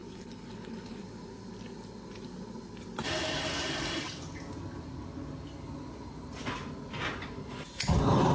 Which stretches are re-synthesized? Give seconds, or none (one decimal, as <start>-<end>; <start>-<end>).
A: 0.0-1.0